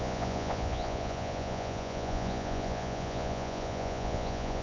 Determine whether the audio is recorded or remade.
remade